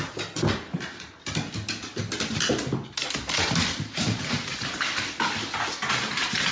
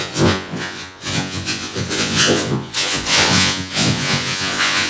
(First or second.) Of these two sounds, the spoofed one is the second